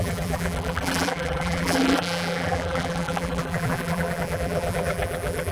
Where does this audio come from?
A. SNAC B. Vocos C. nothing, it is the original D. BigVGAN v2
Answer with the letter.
D